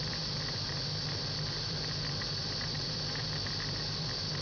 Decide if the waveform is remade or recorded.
remade